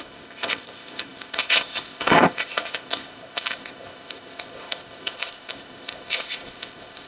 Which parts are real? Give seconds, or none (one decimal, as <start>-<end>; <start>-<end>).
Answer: none

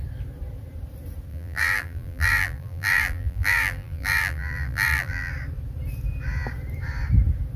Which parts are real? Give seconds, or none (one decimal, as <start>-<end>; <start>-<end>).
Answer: 0.0-1.3; 5.3-7.6

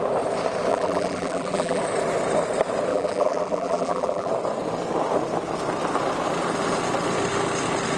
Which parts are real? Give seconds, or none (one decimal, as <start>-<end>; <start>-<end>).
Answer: 0.0-0.7; 1.8-2.9; 4.3-8.0

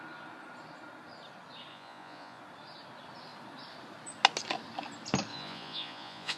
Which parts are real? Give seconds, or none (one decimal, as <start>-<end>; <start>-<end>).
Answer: 0.0-1.7; 2.4-5.3

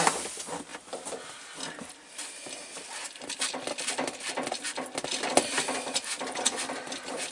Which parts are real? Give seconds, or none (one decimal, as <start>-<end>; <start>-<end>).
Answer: 0.0-7.3